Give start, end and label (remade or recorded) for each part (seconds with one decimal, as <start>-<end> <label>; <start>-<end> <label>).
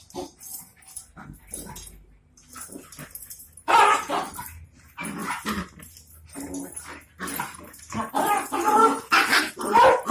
0.0-10.1 recorded